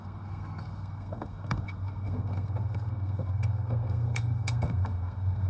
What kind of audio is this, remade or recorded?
remade